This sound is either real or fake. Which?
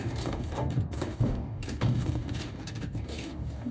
fake